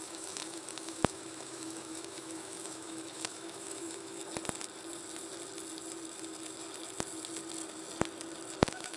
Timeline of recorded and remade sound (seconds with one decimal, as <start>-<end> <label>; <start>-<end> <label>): 0.0-4.2 remade; 4.2-8.6 recorded; 8.6-9.0 remade